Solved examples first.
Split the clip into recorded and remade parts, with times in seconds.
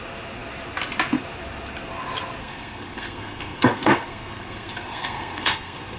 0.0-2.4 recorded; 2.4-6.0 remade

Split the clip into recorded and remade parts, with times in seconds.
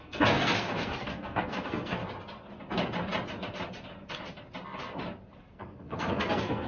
0.0-2.0 remade; 2.0-5.4 recorded; 5.4-6.7 remade